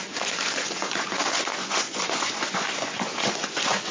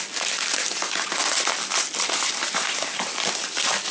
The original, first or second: second